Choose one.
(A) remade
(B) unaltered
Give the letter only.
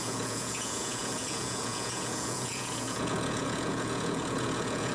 A